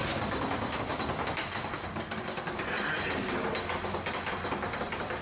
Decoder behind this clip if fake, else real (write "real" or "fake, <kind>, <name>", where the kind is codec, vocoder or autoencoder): real